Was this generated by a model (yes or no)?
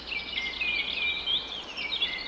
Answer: no